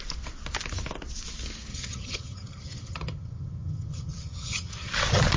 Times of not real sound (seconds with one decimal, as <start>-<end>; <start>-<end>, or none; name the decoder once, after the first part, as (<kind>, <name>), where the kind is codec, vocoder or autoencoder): 1.7-4.9 (vocoder, HiFi-GAN)